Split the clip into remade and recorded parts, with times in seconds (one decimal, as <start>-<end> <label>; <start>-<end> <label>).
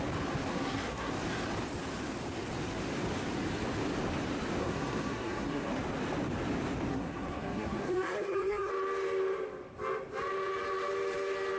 0.0-0.5 recorded; 0.5-1.1 remade; 1.1-4.6 recorded; 4.6-5.7 remade; 5.7-6.9 recorded; 6.9-8.7 remade; 8.7-11.6 recorded